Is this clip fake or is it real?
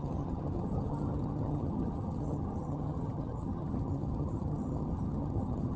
fake